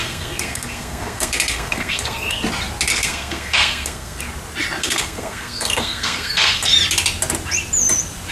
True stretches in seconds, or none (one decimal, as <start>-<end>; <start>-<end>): 2.4-2.9; 4.2-4.8; 6.7-8.3